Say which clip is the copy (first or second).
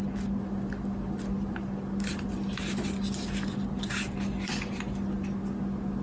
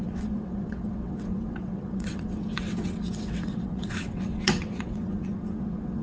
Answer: second